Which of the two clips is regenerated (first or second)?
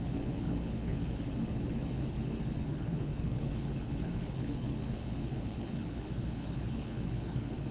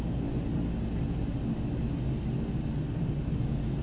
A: first